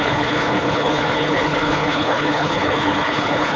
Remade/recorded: remade